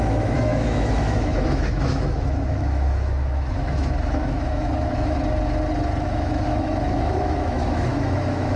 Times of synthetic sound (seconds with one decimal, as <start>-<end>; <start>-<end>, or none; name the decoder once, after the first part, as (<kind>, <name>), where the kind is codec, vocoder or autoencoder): 0.0-5.2 (autoencoder, DAC-VAE); 6.0-8.6